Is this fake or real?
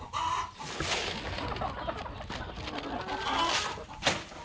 real